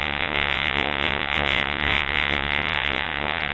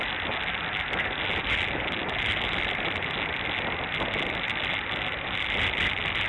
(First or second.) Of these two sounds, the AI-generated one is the first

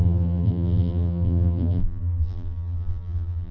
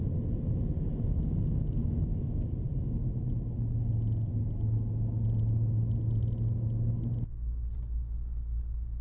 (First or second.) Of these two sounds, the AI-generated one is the first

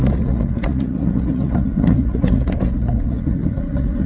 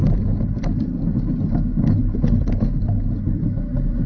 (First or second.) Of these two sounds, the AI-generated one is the first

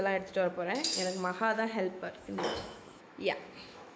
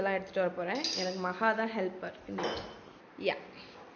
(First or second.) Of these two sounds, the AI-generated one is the first